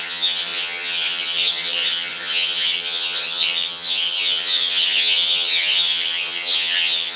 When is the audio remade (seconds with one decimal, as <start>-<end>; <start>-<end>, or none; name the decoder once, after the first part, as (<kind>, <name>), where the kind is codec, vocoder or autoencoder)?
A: 0.0-7.2 (vocoder, HiFi-GAN)